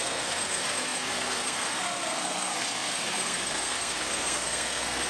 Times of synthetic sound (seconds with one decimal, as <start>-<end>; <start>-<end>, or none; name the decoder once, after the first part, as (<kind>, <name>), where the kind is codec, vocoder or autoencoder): 0.0-5.1 (codec, SNAC)